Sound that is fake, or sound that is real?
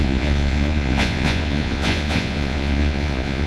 fake